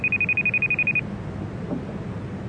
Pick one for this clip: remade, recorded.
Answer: recorded